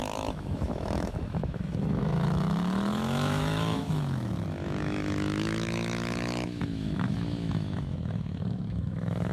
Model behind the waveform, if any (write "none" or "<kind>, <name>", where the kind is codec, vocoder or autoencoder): autoencoder, DAC-VAE